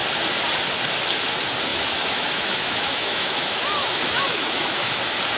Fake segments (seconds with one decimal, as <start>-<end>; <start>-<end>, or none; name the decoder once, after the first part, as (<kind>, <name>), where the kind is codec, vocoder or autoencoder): 1.7-4.9 (autoencoder, DAC-VAE)